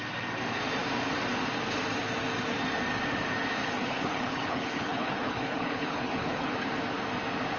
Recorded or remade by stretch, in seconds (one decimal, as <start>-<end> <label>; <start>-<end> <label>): 0.0-3.6 recorded; 3.6-6.5 remade; 6.5-7.6 recorded